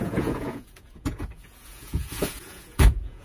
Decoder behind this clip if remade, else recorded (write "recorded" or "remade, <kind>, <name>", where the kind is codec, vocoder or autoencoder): remade, vocoder, Vocos